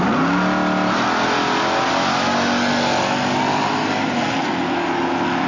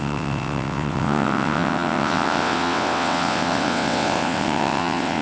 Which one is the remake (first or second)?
second